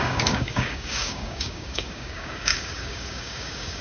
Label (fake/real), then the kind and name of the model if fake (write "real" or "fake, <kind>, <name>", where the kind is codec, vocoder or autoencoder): fake, codec, DAC